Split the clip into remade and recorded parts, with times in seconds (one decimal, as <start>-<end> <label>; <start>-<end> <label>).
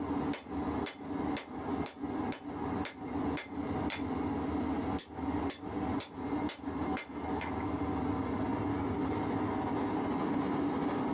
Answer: 0.0-11.1 recorded